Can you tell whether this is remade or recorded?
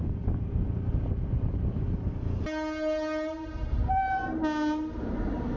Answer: recorded